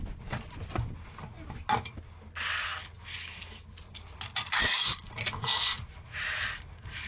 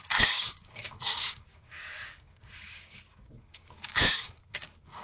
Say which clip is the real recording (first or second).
first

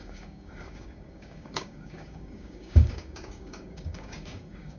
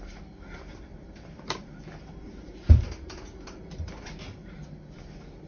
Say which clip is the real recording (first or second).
second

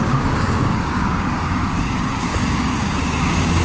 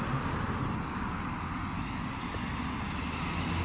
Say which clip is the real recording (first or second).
second